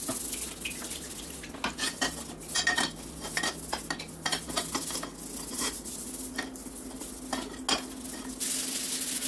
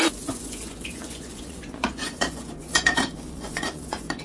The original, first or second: first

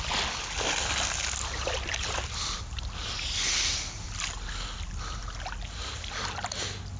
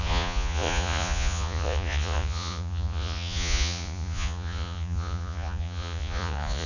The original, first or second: first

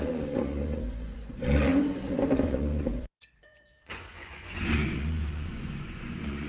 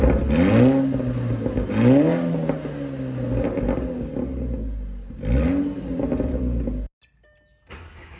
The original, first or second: second